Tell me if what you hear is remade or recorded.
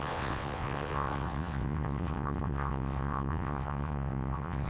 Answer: remade